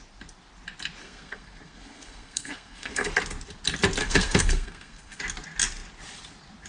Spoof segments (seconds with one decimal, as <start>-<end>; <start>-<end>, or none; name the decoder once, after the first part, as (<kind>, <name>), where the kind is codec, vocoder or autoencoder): 1.0-3.1 (codec, SNAC); 4.0-5.2